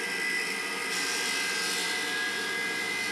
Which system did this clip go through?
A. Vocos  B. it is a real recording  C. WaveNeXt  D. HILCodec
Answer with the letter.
B